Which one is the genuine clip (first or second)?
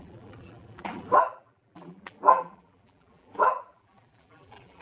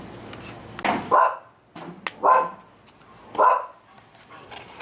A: second